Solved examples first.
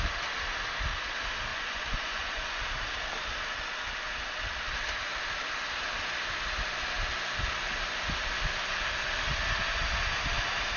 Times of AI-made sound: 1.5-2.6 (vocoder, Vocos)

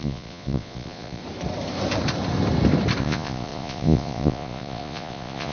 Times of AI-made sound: 0.0-1.2 (vocoder, Vocos); 3.0-5.5

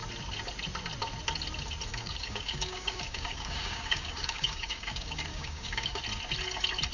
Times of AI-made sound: 1.9-6.0 (codec, DAC)

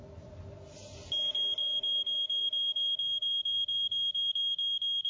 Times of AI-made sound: 1.6-4.3 (codec, DAC)

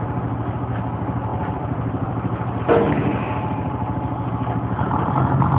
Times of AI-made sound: 1.3-2.6 (vocoder, BigVGAN v2)

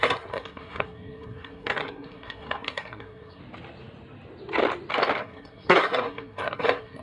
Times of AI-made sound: 0.0-3.4 (codec, SNAC); 5.2-7.0